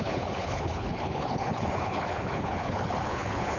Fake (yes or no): yes